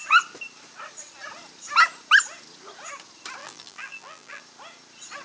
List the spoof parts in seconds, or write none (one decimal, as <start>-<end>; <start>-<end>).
3.4-4.4